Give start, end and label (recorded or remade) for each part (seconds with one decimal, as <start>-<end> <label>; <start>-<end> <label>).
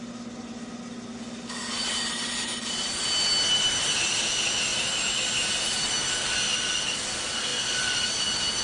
0.0-8.6 recorded